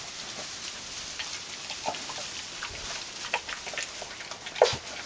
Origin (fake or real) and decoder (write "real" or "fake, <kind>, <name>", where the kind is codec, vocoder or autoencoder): real